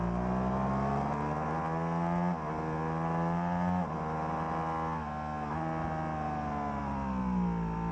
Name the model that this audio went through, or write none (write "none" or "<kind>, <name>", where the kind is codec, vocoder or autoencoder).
none